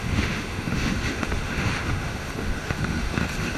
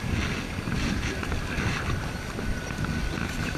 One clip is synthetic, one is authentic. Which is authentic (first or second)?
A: second